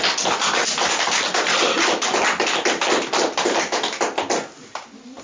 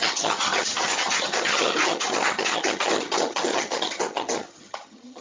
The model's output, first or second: second